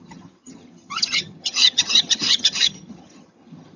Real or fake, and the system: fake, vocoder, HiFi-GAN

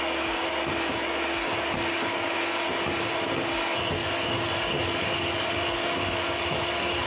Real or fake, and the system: real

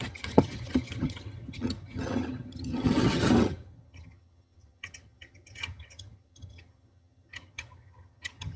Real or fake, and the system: fake, vocoder, HiFi-GAN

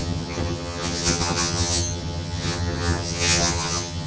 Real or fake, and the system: fake, vocoder, HiFi-GAN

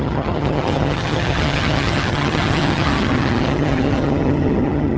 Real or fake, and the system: fake, vocoder, HiFi-GAN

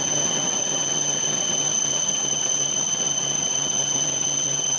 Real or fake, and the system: fake, vocoder, HiFi-GAN